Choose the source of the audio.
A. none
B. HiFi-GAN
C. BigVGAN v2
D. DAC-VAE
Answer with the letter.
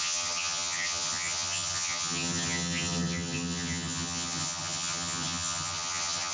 B